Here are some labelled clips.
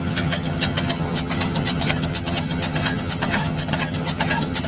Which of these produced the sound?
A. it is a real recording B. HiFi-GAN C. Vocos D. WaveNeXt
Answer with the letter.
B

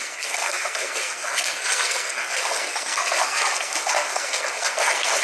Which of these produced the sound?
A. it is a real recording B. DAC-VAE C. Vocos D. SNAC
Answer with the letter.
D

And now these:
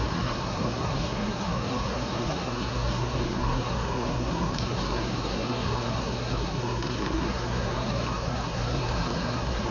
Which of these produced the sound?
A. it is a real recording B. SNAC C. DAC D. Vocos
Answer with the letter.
B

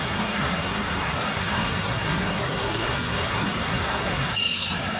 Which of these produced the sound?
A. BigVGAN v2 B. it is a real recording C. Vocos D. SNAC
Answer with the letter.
D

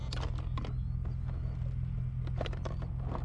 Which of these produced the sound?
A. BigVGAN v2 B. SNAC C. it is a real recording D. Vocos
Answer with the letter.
C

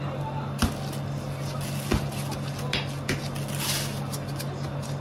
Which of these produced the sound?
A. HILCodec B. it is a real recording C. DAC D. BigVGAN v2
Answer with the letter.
B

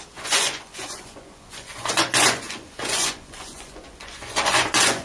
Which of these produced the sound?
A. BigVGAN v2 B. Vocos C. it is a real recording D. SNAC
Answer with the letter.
B